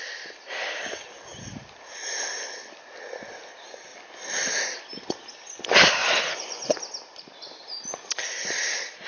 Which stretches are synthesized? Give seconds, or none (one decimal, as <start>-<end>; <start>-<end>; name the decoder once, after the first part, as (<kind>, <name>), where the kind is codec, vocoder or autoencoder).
6.0-6.7 (vocoder, Vocos)